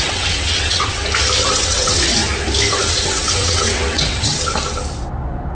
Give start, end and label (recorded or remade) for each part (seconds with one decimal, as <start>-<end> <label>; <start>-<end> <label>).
0.0-1.0 remade; 1.0-1.5 recorded; 1.5-2.2 remade; 2.2-2.8 recorded; 2.8-4.3 remade; 4.3-5.5 recorded